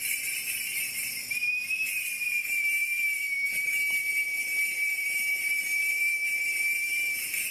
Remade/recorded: remade